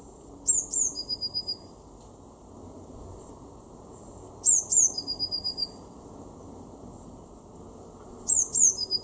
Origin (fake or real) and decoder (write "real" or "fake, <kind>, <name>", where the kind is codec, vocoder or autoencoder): real